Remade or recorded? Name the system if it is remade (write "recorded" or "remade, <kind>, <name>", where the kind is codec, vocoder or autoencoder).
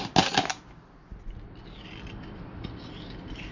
recorded